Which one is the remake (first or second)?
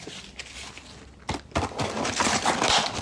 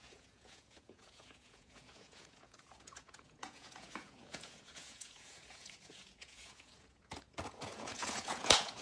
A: second